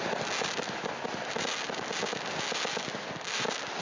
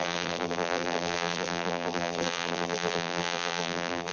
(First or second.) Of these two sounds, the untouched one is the first